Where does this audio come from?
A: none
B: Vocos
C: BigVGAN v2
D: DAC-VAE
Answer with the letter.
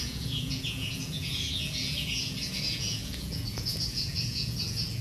B